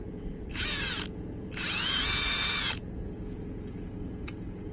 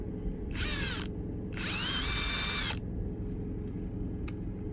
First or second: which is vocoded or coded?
first